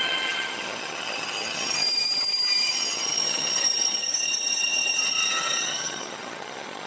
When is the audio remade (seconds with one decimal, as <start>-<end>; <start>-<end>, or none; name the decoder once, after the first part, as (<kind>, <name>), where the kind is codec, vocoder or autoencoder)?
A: 0.0-6.9 (vocoder, HiFi-GAN)